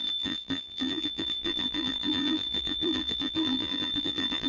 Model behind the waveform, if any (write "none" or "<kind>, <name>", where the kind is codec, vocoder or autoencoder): vocoder, BigVGAN v2